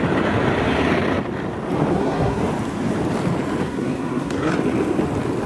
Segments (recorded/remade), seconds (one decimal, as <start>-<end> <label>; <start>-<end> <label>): 0.0-1.9 recorded; 1.9-2.4 remade; 2.4-3.6 recorded; 3.6-4.5 remade; 4.5-5.5 recorded